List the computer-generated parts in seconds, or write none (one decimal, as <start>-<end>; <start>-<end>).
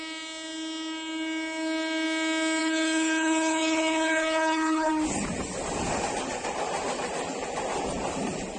2.6-4.9